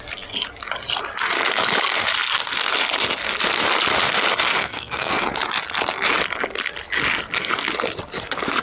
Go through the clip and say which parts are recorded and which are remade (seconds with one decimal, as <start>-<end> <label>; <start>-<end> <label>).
0.0-4.6 recorded; 4.6-5.2 remade; 5.2-8.6 recorded